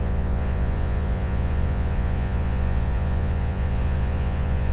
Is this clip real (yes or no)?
no